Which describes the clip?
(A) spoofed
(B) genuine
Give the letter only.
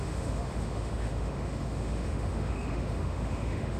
A